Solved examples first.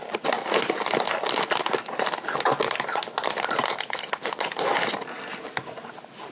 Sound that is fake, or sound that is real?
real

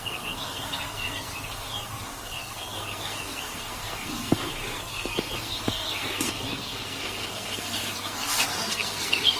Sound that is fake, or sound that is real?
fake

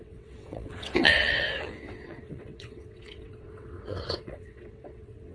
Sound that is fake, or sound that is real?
fake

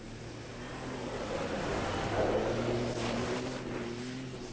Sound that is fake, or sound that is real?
real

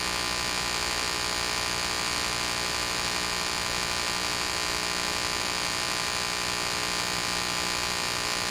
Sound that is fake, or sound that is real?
real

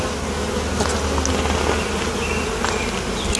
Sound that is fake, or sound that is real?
real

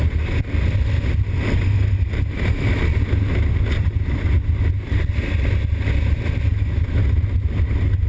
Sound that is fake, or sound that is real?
real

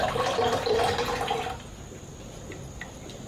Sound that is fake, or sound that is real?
real